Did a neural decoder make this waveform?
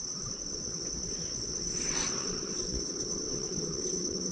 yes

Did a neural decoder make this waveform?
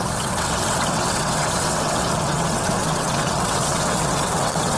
yes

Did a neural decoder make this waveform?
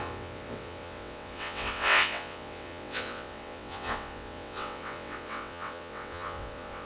yes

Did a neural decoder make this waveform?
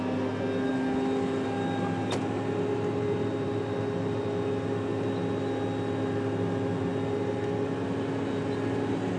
no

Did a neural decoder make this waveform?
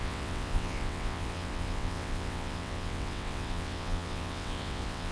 yes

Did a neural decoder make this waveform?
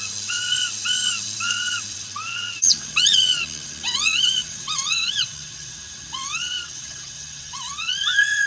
yes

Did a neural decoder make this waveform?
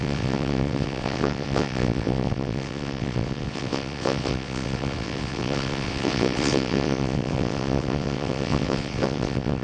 yes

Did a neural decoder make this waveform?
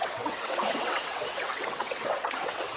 yes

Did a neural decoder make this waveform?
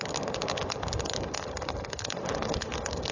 no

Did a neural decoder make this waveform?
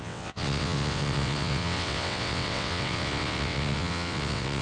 yes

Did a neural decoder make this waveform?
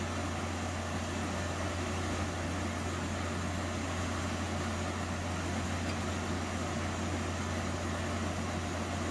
no